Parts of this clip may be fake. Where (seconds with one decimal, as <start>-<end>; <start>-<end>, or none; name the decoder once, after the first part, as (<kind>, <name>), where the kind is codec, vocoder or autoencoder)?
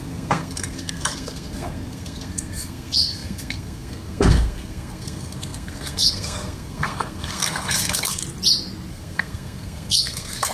0.0-8.2 (codec, SNAC); 8.9-10.5